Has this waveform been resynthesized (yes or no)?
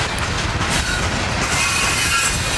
no